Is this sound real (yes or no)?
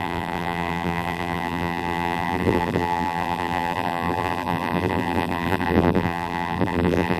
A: no